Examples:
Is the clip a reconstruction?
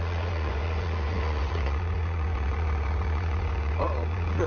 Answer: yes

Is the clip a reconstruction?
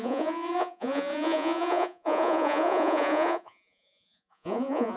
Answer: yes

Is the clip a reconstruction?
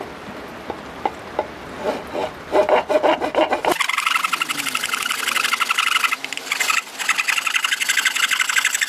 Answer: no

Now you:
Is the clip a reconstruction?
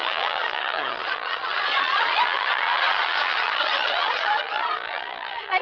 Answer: yes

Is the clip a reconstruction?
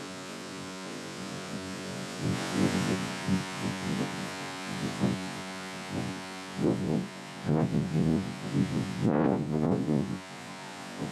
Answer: yes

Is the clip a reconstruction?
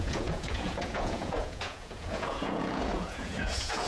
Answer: yes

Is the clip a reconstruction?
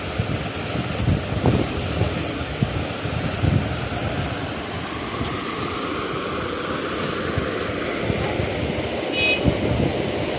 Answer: no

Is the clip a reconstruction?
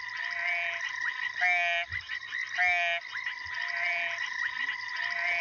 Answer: no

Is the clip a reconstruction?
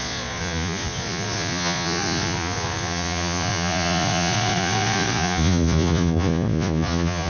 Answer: yes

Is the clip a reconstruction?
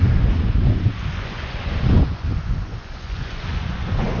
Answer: yes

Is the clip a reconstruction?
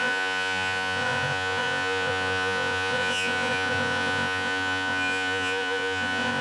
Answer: yes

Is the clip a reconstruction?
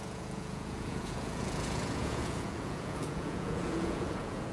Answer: yes